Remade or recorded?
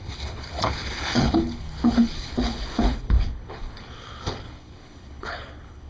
remade